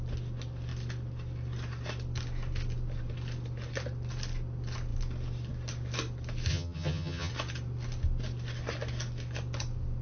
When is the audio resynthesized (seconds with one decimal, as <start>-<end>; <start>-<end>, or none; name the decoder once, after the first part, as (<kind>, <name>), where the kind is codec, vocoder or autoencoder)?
6.5-7.3 (vocoder, HiFi-GAN)